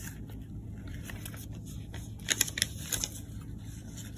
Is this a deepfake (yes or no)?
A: no